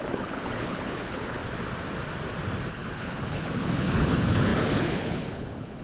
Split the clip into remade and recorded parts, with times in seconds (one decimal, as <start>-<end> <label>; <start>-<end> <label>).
0.0-1.4 remade; 1.4-2.7 recorded; 2.7-5.8 remade